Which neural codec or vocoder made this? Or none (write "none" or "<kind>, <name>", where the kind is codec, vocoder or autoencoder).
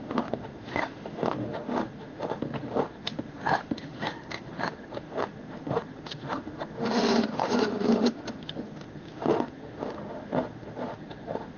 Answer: autoencoder, DAC-VAE